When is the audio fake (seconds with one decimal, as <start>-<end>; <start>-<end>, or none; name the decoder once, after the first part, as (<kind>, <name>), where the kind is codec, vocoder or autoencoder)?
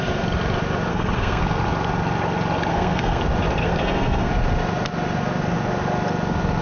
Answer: 0.9-1.4 (codec, SNAC); 2.7-3.2; 3.6-4.3